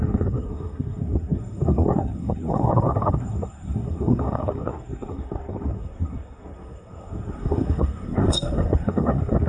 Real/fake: fake